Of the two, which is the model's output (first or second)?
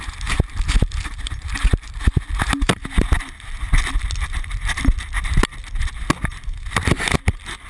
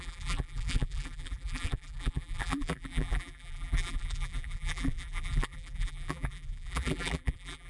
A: second